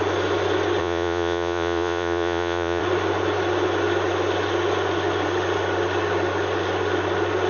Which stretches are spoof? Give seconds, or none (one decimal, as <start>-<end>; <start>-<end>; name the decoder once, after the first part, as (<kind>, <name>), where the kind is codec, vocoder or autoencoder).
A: 0.8-2.8 (vocoder, Vocos)